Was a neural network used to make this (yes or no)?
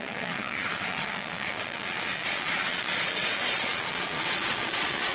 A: yes